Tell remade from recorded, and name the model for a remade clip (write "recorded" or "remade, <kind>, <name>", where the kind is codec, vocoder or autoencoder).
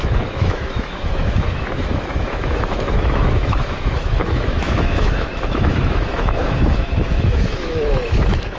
remade, autoencoder, DAC-VAE